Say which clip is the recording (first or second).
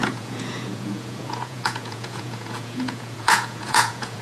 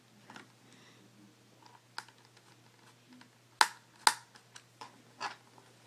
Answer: second